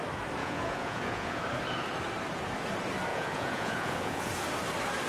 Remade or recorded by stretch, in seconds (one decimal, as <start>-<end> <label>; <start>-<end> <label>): 0.0-0.4 recorded; 0.4-1.4 remade; 1.4-3.1 recorded; 3.1-4.3 remade; 4.3-5.1 recorded